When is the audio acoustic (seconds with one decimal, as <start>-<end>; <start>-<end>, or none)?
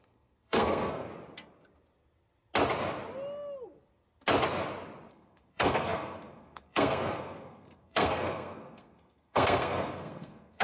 1.1-5.1